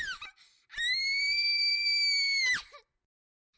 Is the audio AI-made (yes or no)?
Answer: yes